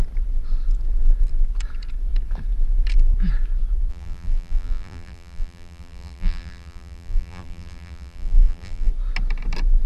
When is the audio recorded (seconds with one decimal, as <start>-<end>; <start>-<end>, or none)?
0.0-3.9; 8.9-9.9